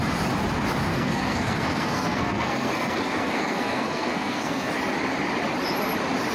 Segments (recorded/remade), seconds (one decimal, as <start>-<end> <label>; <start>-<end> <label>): 0.0-0.9 recorded; 0.9-4.7 remade; 4.7-6.3 recorded